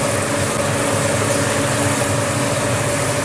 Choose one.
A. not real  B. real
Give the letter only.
B